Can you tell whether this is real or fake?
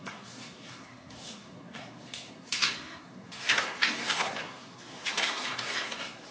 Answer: fake